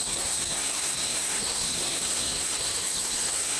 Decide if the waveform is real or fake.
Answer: fake